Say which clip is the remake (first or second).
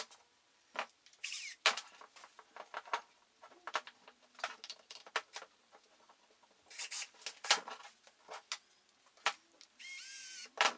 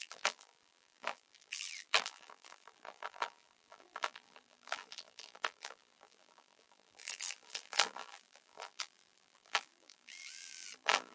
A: second